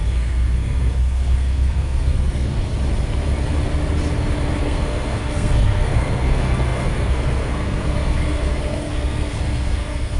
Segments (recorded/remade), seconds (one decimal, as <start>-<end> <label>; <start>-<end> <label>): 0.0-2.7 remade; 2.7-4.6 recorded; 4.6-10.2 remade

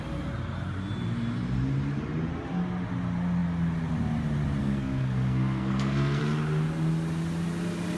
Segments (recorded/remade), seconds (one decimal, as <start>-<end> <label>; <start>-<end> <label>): 0.0-4.6 recorded; 4.6-6.2 remade; 6.2-8.0 recorded

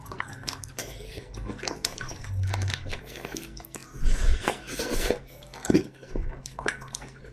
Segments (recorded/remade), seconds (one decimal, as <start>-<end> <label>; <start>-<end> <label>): 0.0-7.3 remade